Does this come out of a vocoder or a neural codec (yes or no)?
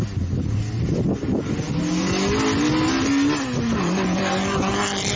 no